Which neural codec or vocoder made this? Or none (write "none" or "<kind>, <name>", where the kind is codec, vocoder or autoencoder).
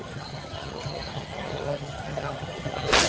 vocoder, HiFi-GAN